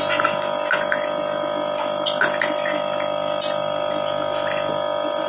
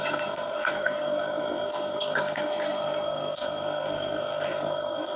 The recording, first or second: first